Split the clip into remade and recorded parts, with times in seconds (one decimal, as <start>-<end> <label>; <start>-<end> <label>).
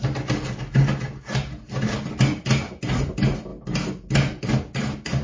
0.0-5.2 recorded